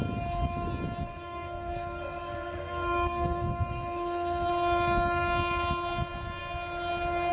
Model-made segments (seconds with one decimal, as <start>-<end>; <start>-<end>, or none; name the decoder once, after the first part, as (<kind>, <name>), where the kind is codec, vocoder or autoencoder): 1.1-4.5 (codec, SNAC)